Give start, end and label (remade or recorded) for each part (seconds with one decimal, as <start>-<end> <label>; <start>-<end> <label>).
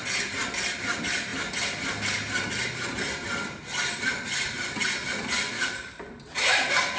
0.0-7.0 recorded